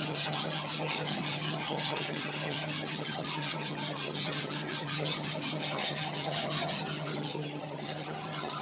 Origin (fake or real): fake